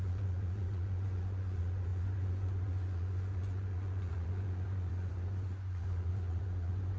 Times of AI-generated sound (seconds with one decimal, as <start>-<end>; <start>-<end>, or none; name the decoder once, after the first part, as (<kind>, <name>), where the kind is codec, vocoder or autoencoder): 0.0-7.0 (vocoder, Vocos)